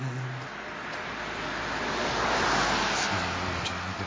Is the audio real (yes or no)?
yes